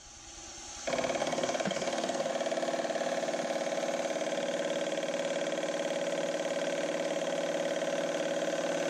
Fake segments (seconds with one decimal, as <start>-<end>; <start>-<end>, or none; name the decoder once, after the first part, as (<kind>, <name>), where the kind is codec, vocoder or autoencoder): 1.2-2.3 (codec, SNAC)